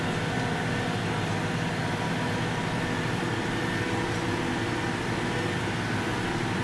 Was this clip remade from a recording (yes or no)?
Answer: no